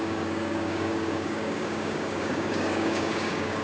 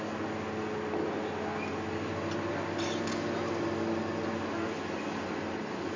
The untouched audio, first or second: second